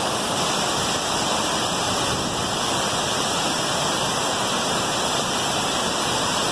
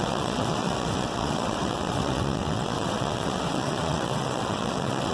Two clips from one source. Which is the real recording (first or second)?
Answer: first